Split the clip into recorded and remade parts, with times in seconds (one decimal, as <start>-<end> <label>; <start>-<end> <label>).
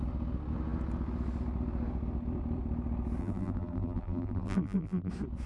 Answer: 0.0-3.2 recorded; 3.2-5.1 remade; 5.1-5.5 recorded